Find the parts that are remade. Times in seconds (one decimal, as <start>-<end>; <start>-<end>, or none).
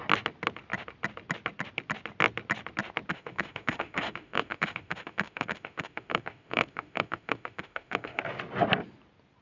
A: 3.1-8.2